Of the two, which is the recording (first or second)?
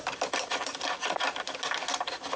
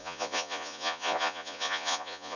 first